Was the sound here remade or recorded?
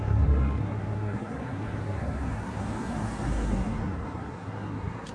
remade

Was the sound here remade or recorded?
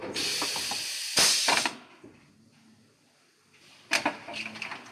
recorded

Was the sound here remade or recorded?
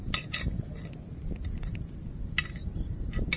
recorded